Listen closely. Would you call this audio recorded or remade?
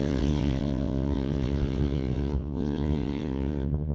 remade